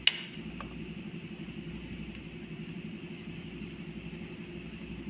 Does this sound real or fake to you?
real